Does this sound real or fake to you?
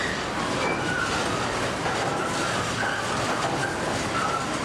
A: real